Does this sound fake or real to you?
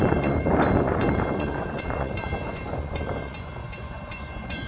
fake